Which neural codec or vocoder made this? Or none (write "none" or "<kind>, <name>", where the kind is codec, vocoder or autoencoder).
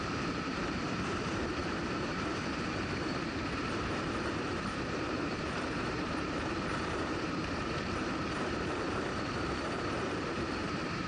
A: vocoder, BigVGAN v2